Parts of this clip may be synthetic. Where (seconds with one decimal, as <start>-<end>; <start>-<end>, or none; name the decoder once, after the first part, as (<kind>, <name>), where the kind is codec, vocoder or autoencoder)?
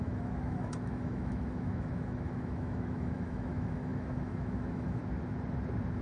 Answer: 0.0-5.0 (autoencoder, DAC-VAE)